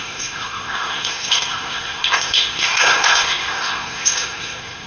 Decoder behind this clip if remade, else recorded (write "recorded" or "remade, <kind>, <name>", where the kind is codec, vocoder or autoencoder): remade, codec, SNAC